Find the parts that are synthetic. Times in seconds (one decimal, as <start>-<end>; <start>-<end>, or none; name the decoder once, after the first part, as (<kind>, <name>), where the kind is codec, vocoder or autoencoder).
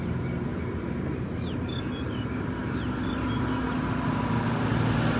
0.5-1.2 (vocoder, BigVGAN v2)